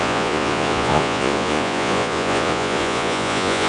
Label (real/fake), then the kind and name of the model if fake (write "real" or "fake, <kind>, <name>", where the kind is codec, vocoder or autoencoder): fake, vocoder, Vocos